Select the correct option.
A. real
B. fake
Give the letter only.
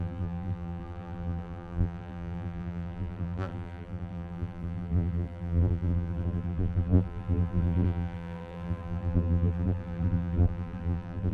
B